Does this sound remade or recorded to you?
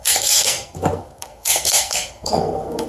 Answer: remade